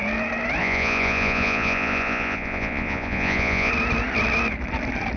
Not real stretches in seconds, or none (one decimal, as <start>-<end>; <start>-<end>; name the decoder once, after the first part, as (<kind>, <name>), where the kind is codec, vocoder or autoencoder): 0.6-3.7 (vocoder, Vocos)